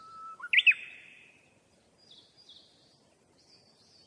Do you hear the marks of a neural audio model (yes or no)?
no